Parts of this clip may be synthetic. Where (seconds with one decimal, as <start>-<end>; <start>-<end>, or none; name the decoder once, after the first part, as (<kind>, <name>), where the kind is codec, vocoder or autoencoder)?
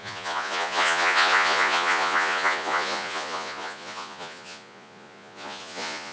0.0-6.1 (vocoder, Vocos)